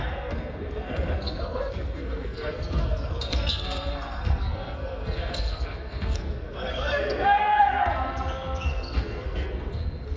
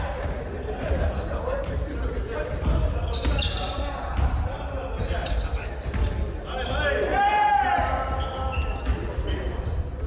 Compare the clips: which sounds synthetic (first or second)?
first